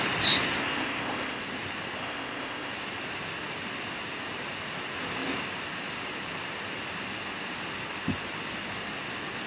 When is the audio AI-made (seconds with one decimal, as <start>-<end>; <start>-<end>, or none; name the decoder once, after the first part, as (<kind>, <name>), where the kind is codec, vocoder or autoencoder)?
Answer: 0.6-1.4 (codec, ZipCodec); 2.0-2.7